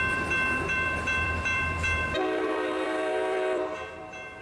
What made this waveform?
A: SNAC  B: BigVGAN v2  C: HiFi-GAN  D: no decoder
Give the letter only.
B